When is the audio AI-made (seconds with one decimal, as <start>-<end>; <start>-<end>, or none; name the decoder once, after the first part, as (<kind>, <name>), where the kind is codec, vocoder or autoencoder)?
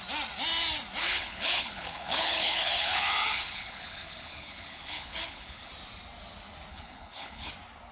1.0-5.7 (codec, HILCodec); 6.7-7.5